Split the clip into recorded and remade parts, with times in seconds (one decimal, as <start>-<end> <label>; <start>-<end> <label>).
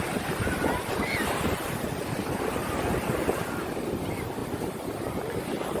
0.0-2.6 recorded; 2.6-3.8 remade; 3.8-5.8 recorded